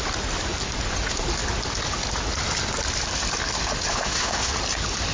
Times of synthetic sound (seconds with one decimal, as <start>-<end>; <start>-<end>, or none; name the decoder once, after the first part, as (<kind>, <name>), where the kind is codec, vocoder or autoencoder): 3.9-4.5 (autoencoder, DAC-VAE)